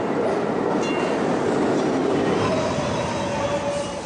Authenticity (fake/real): real